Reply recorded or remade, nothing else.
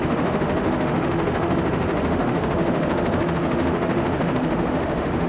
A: remade